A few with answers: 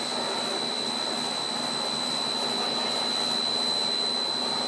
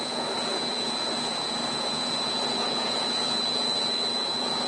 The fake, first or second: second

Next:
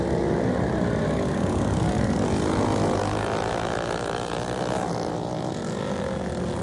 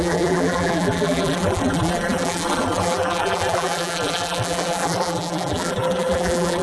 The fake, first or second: second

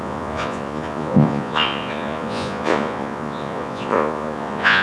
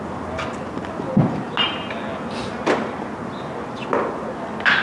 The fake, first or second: first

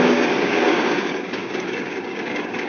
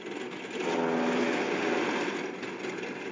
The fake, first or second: first